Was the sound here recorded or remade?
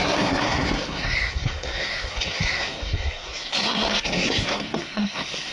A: remade